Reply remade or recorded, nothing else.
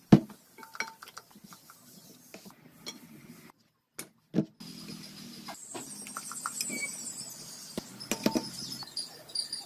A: recorded